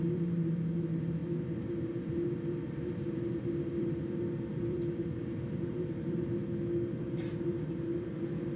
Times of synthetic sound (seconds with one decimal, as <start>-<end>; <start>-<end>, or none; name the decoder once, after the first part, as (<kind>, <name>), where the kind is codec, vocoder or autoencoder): 0.0-6.4 (vocoder, BigVGAN v2); 7.0-8.6

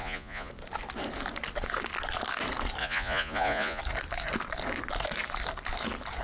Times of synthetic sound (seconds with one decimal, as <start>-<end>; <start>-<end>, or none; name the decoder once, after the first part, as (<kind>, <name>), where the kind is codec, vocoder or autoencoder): 0.0-0.5 (vocoder, Vocos); 2.8-3.8

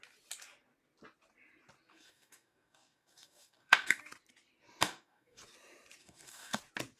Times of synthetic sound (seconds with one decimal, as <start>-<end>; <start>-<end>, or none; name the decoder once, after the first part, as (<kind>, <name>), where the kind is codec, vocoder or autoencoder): 1.9-4.0 (codec, DAC); 4.8-5.4; 6.0-6.6